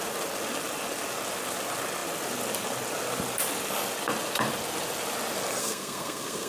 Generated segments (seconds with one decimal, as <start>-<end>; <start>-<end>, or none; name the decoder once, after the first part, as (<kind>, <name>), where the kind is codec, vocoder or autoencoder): 5.6-6.5 (codec, SNAC)